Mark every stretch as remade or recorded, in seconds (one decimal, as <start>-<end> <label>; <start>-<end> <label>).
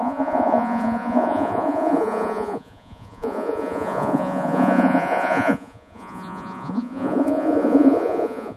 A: 0.0-8.6 remade